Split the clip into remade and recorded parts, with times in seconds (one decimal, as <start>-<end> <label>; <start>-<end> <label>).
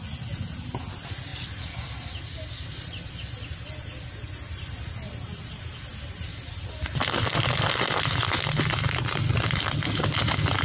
0.0-1.3 recorded; 1.3-5.5 remade; 5.5-5.9 recorded; 5.9-10.6 remade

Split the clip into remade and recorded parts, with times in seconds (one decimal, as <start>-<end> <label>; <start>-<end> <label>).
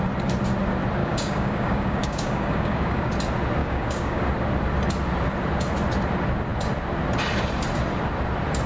0.0-1.0 recorded; 1.0-3.1 remade; 3.1-3.6 recorded; 3.6-4.2 remade; 4.2-8.7 recorded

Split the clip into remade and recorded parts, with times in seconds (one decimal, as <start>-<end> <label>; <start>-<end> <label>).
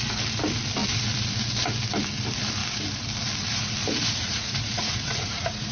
0.0-3.8 recorded; 3.8-5.7 remade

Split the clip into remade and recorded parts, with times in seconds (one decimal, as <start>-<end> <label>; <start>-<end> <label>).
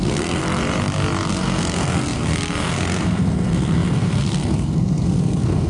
0.0-0.4 remade; 0.4-1.3 recorded; 1.3-5.7 remade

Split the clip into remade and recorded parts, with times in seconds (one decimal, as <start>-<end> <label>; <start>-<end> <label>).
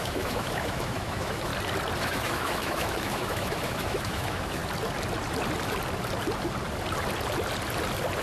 0.0-1.5 remade; 1.5-2.0 recorded; 2.0-4.6 remade; 4.6-8.2 recorded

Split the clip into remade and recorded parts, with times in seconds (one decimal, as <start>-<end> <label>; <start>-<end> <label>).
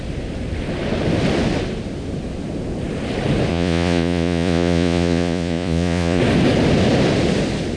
0.0-3.5 recorded; 3.5-6.2 remade; 6.2-7.8 recorded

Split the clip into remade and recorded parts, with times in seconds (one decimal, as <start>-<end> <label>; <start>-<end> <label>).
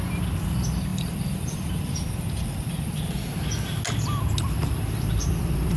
0.0-0.9 recorded; 0.9-3.0 remade; 3.0-4.6 recorded; 4.6-5.8 remade